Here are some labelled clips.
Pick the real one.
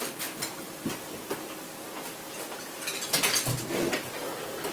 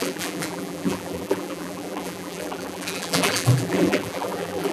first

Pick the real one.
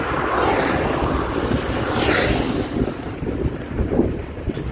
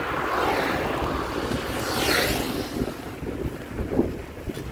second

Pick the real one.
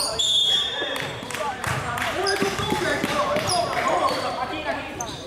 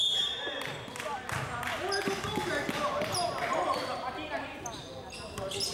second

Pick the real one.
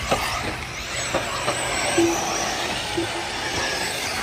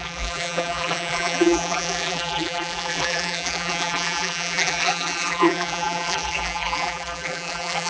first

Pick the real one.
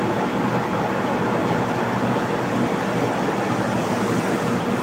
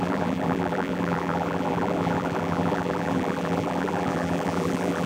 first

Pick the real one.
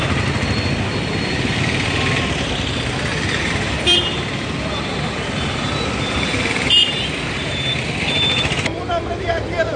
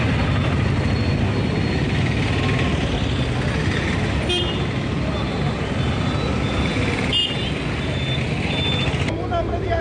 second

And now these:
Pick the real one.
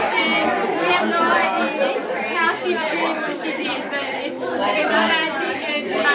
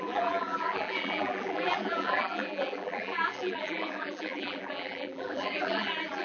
first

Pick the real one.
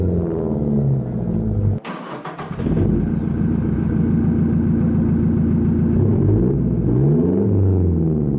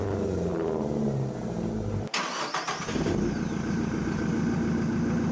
first